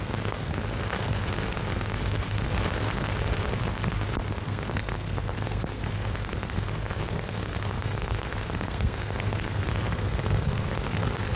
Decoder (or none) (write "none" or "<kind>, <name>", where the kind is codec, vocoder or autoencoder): codec, SNAC